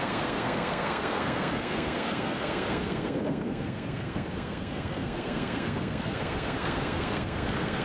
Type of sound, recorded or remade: remade